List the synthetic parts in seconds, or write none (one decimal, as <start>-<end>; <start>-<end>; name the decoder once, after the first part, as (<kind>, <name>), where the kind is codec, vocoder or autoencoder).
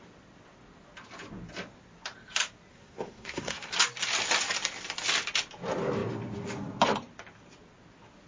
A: 2.7-3.7 (codec, SNAC)